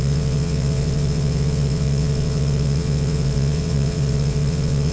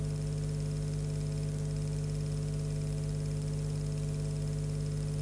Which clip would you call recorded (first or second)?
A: second